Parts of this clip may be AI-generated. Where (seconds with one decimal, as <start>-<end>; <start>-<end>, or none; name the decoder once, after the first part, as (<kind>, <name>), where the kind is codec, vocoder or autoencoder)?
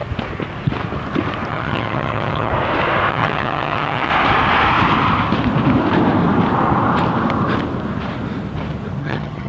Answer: 1.5-2.5 (vocoder, HiFi-GAN); 3.1-4.1; 9.0-9.5